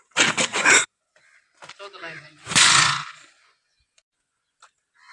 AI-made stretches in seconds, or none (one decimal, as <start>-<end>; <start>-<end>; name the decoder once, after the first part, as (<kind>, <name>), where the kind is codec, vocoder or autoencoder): 0.5-1.1 (vocoder, Vocos); 2.0-4.6